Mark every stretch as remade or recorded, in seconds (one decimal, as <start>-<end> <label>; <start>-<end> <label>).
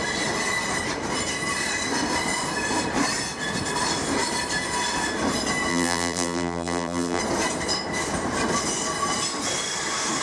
0.0-5.7 recorded; 5.7-7.2 remade; 7.2-10.2 recorded